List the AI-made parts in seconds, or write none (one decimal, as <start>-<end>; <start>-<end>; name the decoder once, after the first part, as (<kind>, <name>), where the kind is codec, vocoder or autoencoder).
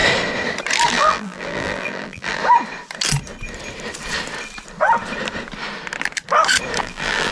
0.9-2.4 (vocoder, BigVGAN v2); 6.8-7.3